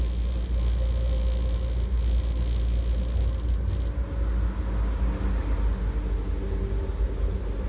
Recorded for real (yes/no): yes